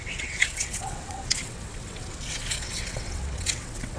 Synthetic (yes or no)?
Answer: yes